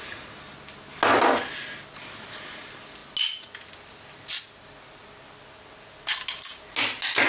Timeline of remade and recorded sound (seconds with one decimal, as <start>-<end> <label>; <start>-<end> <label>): 0.0-7.3 recorded